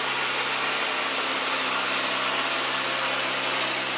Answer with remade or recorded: recorded